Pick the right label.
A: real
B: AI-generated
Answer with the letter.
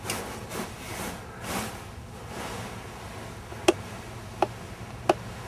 A